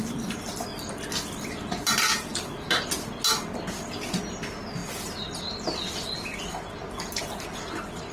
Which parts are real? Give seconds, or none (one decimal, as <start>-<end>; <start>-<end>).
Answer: 0.0-8.1